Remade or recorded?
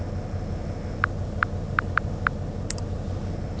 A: recorded